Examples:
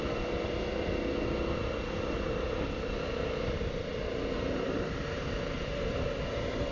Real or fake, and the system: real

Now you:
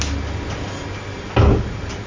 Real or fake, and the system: real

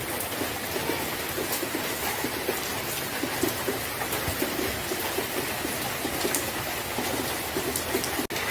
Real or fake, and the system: real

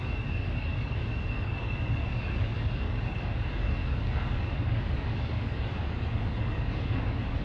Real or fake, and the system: fake, codec, DAC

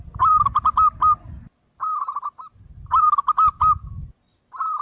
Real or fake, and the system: real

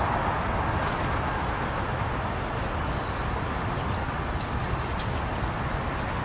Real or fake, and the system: real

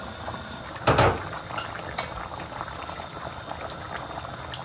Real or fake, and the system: real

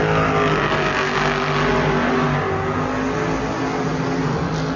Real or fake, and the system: real